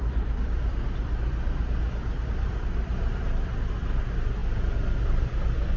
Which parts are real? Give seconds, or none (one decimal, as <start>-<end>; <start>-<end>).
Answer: 0.0-5.8